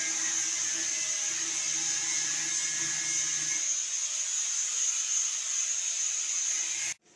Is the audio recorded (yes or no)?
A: yes